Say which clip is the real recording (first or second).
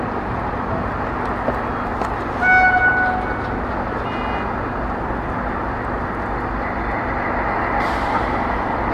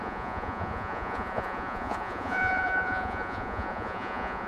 first